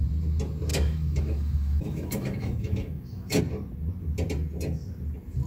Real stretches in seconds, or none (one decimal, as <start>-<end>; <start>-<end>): 0.0-0.7; 3.4-5.5

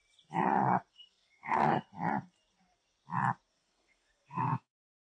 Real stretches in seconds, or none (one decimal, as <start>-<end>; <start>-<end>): 0.0-0.9; 1.6-3.5

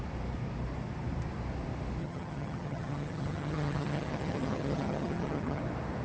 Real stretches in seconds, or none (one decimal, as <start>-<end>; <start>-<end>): 0.0-2.0; 5.6-6.0

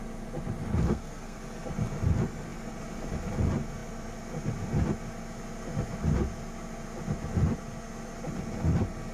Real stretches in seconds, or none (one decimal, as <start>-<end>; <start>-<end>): 0.0-0.9; 1.4-9.1

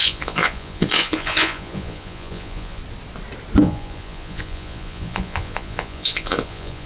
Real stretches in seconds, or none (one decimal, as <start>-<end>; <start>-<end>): 2.8-3.6

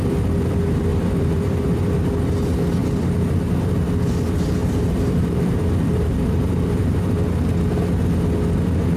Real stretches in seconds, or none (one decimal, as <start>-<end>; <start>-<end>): 0.0-0.9; 2.1-2.8; 3.7-4.6; 7.0-9.0

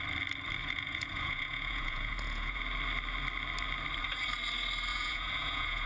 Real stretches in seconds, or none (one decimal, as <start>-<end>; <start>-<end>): 0.0-0.6; 2.6-4.9